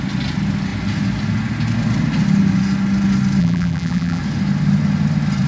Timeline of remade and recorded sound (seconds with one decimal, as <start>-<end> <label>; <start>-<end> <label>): 0.0-3.4 recorded; 3.4-4.2 remade; 4.2-5.5 recorded